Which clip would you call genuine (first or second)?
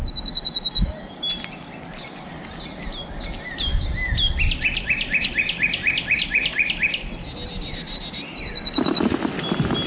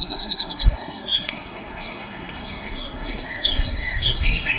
first